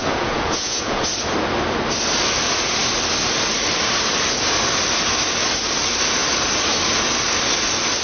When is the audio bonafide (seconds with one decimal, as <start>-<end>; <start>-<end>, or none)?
1.1-8.0